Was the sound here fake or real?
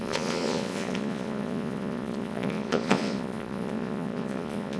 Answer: fake